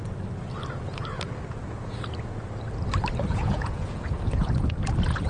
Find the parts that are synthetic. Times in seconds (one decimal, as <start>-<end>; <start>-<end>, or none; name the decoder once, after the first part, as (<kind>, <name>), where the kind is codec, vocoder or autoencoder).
3.3-4.5 (vocoder, Vocos)